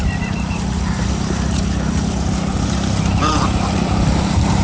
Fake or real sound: fake